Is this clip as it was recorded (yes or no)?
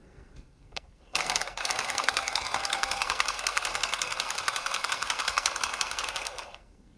no